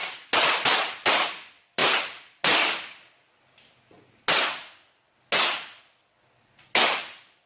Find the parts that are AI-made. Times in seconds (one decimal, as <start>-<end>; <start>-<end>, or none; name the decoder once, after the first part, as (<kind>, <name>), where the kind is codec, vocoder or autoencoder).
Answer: none